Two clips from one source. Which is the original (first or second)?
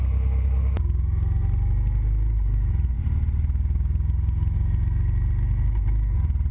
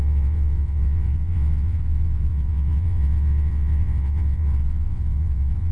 first